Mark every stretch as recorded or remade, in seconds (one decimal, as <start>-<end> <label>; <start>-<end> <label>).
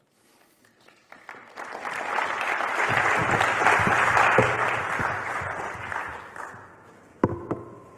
0.0-6.7 recorded; 6.7-8.0 remade